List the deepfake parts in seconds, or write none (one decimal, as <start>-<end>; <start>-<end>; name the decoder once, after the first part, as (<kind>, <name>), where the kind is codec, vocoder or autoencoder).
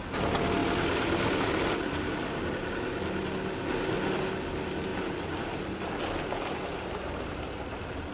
0.6-2.5 (vocoder, BigVGAN v2); 4.9-5.9; 6.7-8.1